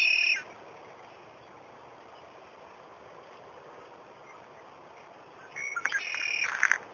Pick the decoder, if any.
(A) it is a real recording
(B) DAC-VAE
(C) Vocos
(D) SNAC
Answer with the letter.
A